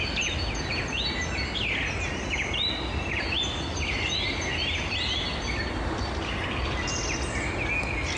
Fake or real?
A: real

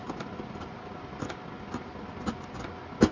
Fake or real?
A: real